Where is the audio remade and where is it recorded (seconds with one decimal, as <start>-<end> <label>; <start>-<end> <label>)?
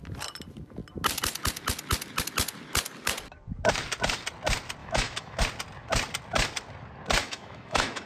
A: 0.0-4.8 recorded; 4.8-5.4 remade; 5.4-7.2 recorded; 7.2-8.1 remade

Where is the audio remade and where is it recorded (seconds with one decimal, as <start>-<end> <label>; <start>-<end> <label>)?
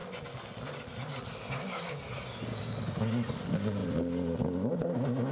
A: 0.0-5.3 recorded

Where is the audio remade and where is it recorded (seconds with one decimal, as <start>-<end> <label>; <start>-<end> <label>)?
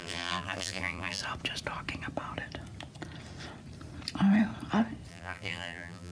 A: 0.0-1.2 remade; 1.2-5.1 recorded; 5.1-6.1 remade